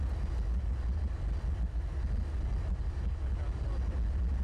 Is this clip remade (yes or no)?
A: no